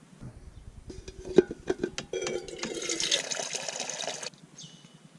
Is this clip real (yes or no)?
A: yes